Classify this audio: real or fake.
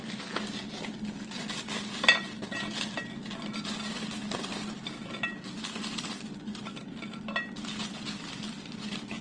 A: real